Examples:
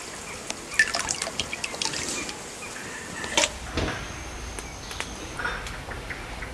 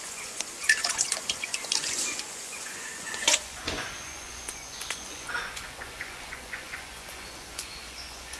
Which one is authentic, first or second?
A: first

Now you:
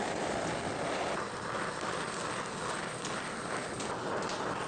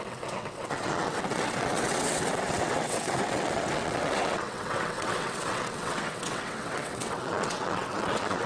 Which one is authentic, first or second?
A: first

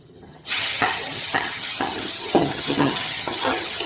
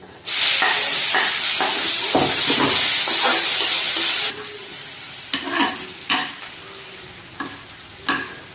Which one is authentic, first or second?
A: second